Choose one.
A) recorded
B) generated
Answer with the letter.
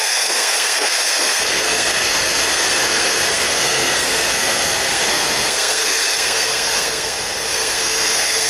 B